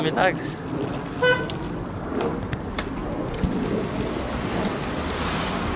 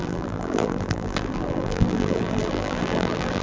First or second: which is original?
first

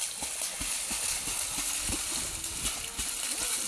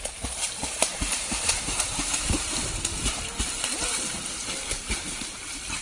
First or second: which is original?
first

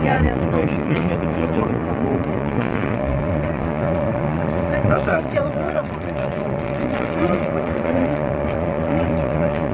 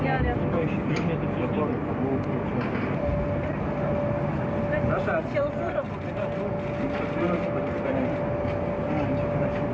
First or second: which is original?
second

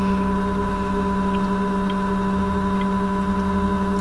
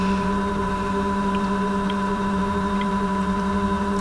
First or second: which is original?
first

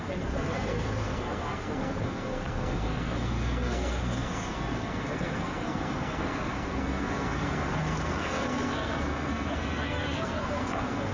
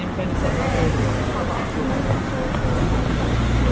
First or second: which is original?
second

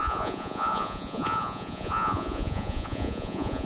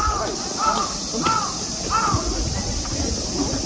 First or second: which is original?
second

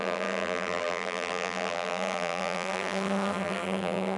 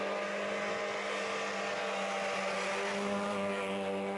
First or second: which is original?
second